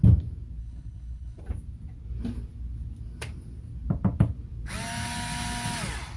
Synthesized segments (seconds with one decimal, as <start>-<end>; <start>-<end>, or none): 0.6-1.4